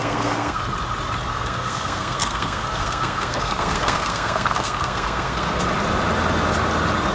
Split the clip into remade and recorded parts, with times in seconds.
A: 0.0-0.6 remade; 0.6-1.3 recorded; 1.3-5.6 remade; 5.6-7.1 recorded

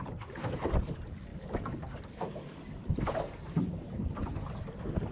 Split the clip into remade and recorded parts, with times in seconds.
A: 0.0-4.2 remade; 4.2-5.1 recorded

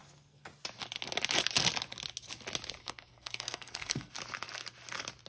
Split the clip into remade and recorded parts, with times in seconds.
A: 0.0-0.5 remade; 0.5-2.8 recorded; 2.8-4.1 remade; 4.1-5.3 recorded